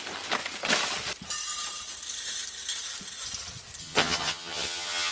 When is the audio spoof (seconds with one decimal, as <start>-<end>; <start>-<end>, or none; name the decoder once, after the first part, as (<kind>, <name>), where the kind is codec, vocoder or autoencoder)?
3.8-5.1 (vocoder, HiFi-GAN)